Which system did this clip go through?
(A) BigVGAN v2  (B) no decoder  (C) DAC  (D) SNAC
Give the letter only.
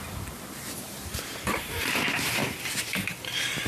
A